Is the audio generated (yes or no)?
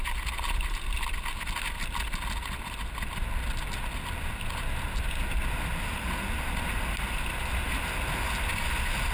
no